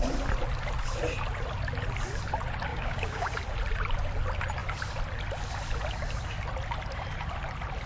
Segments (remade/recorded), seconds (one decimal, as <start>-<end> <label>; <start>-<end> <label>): 0.0-2.7 recorded; 2.7-3.3 remade; 3.3-7.9 recorded